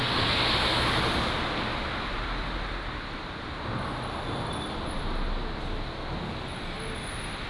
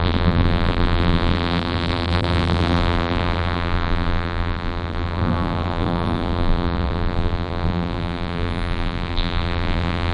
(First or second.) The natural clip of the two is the first